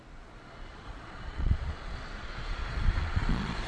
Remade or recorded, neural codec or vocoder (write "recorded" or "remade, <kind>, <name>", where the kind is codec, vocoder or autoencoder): remade, vocoder, Vocos